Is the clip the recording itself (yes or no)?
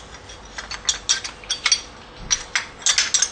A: yes